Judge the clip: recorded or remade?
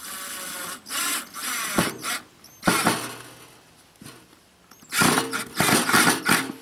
recorded